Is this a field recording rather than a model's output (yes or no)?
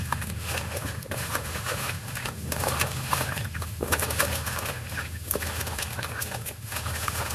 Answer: no